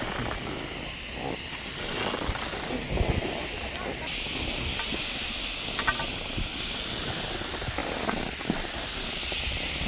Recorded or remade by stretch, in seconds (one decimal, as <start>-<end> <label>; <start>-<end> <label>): 0.0-9.9 recorded